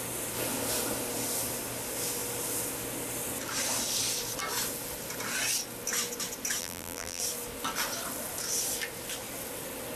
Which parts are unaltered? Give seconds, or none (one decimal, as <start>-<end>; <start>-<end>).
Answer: 0.0-6.6; 7.2-10.0